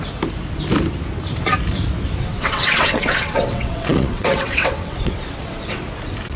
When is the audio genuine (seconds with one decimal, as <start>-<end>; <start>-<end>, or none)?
0.0-2.2; 5.8-6.4